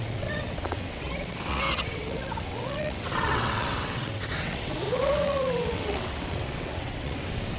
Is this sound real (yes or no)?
no